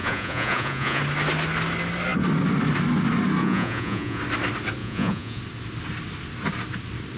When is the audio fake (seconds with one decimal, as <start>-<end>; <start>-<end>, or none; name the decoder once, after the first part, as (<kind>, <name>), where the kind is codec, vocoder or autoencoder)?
0.0-1.0 (vocoder, Vocos); 3.4-4.2; 4.8-5.4